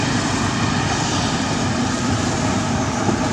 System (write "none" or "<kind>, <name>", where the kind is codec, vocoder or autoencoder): none